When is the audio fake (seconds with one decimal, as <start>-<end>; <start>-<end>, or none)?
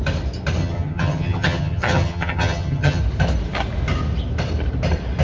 0.6-3.0